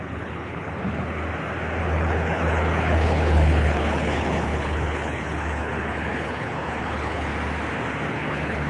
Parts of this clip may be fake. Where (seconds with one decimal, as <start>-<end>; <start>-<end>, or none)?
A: 0.0-1.2; 1.8-7.3; 8.1-8.7